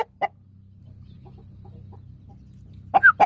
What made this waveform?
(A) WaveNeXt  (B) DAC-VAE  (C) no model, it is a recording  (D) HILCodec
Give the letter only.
C